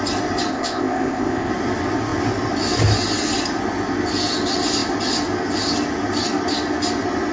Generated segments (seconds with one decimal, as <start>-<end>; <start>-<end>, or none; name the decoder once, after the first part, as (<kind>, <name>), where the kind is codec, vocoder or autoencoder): 0.5-1.5 (codec, ZipCodec)